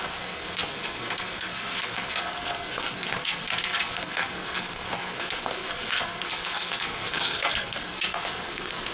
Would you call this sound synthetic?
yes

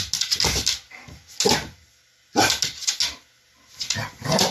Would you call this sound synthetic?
no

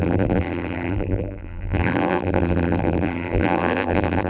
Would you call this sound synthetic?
yes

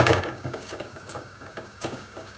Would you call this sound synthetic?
yes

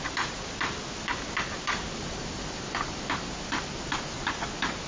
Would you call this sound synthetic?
no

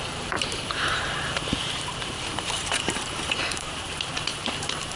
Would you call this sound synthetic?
yes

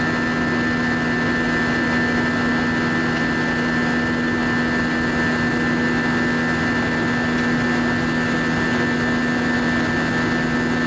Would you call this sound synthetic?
no